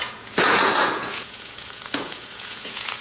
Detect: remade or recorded remade